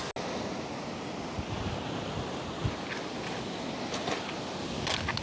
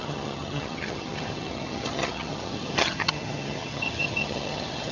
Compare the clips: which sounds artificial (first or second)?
second